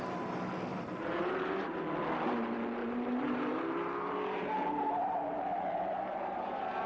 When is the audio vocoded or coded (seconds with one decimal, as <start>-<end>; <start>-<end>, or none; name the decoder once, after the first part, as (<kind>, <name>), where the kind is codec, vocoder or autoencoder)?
0.7-1.8 (vocoder, BigVGAN v2); 2.8-6.9